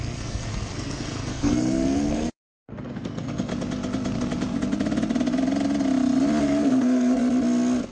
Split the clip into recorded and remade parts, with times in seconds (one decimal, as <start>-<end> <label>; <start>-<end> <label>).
0.0-3.5 remade; 3.5-6.4 recorded; 6.4-7.2 remade; 7.2-7.9 recorded

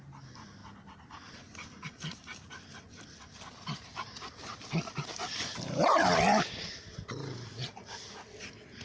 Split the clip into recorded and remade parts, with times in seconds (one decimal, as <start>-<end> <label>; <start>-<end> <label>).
0.0-8.8 recorded

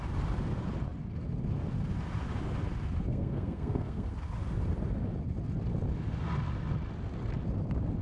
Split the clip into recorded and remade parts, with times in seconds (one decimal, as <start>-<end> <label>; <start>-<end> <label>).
0.0-3.1 recorded; 3.1-4.1 remade; 4.1-8.0 recorded

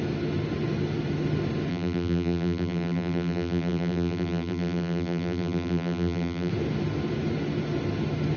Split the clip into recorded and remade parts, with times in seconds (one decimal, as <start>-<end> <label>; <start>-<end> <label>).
0.0-1.7 recorded; 1.7-6.5 remade; 6.5-8.4 recorded

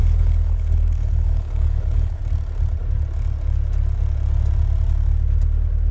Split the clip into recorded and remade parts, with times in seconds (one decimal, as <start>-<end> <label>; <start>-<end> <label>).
0.0-2.2 remade; 2.2-5.9 recorded

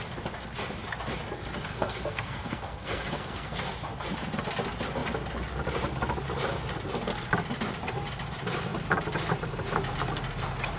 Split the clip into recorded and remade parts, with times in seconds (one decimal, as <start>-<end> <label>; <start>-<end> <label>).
0.0-1.7 recorded; 1.7-3.7 remade; 3.7-10.8 recorded

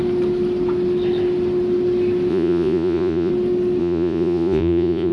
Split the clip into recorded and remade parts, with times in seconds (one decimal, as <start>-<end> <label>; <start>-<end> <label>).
0.0-2.3 recorded; 2.3-3.3 remade; 3.3-3.8 recorded; 3.8-5.1 remade